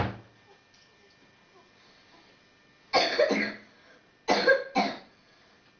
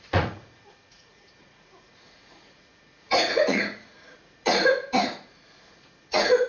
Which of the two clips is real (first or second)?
first